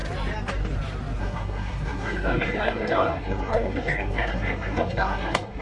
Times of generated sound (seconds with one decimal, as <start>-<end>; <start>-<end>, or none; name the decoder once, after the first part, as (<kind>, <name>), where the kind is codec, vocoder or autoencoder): 1.2-5.6 (codec, SNAC)